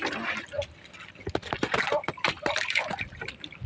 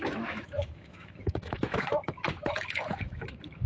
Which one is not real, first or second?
second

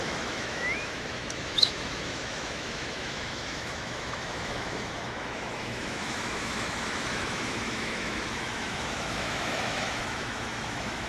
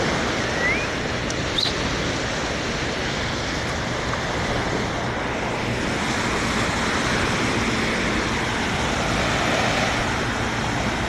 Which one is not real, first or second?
first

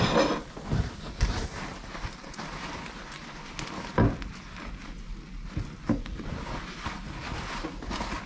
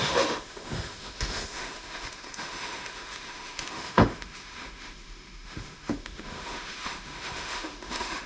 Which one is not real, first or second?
second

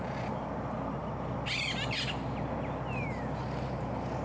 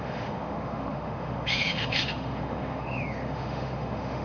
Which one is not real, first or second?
second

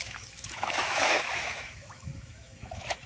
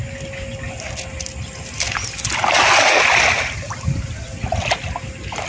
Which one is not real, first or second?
first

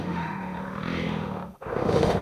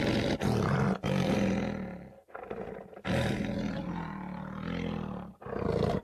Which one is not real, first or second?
first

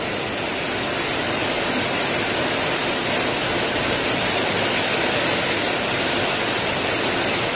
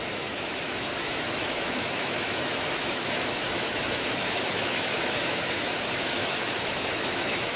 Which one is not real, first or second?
second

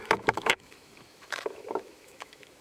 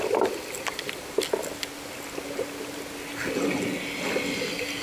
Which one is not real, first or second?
first